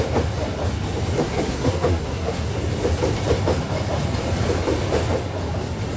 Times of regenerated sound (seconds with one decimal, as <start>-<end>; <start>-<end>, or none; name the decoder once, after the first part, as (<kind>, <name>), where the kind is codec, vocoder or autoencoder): 1.2-2.6 (codec, SNAC)